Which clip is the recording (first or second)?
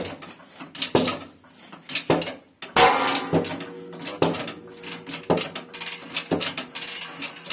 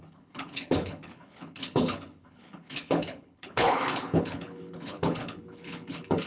first